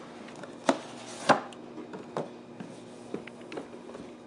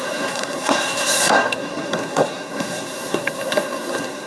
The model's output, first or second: second